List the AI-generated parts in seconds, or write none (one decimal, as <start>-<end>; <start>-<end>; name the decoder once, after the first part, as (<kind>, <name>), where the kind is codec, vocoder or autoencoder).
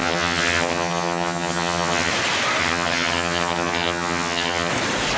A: 0.0-2.1 (vocoder, HiFi-GAN); 2.6-4.7